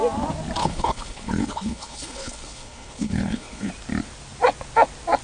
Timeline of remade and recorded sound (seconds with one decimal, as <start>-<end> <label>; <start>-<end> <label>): 0.0-0.6 recorded; 0.6-3.7 remade; 3.7-5.2 recorded